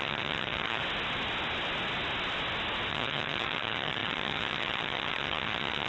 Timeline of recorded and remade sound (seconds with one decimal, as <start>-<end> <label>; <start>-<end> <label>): 0.0-0.8 remade; 0.8-2.9 recorded; 2.9-5.9 remade